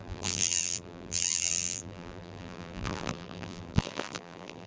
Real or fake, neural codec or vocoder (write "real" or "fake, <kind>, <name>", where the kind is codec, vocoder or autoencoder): fake, vocoder, BigVGAN v2